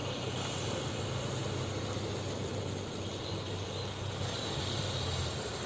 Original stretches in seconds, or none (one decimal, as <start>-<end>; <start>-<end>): 0.0-5.7